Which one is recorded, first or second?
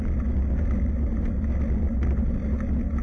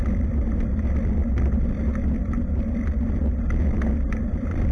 first